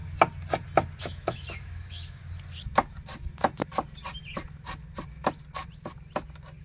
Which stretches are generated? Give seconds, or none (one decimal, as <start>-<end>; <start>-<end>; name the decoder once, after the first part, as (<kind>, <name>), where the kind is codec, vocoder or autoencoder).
1.0-2.2 (autoencoder, DAC-VAE)